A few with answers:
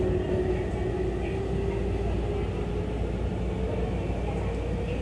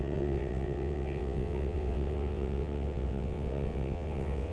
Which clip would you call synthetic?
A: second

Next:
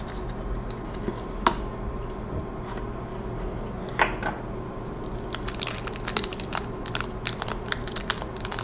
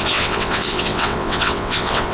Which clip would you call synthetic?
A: second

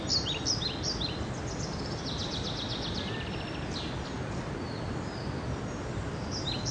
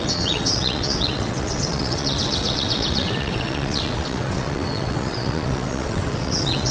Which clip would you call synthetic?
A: second